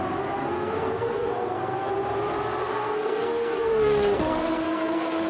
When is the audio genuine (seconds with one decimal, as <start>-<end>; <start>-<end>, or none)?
0.0-0.4; 1.9-2.6